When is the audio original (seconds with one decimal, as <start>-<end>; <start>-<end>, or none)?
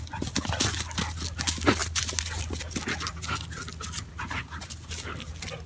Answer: 0.0-5.7